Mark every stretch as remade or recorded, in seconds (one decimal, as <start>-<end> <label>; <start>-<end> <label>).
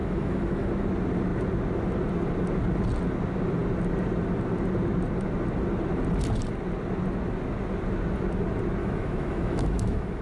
0.0-0.7 remade; 0.7-8.8 recorded; 8.8-10.2 remade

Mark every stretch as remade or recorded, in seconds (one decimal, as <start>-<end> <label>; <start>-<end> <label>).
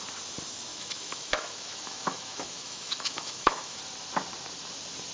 0.0-0.7 recorded; 0.7-3.8 remade; 3.8-5.1 recorded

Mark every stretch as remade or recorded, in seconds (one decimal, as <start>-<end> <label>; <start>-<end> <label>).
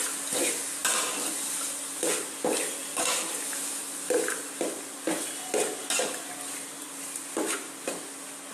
0.0-8.5 recorded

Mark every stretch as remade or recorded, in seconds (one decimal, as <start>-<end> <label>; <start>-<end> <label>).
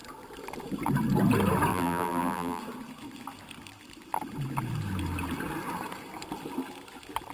0.0-1.7 recorded; 1.7-2.6 remade; 2.6-7.3 recorded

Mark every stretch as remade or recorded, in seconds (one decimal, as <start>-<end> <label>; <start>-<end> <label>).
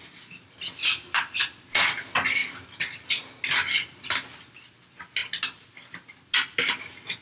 0.0-7.2 recorded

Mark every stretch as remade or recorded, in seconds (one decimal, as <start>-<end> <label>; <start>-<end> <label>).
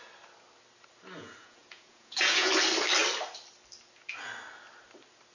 0.0-1.2 recorded; 1.2-2.5 remade; 2.5-5.3 recorded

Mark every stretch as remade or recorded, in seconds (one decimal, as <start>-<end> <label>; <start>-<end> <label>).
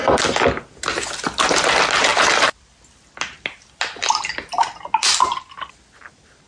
0.0-6.5 recorded